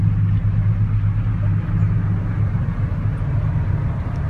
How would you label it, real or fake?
real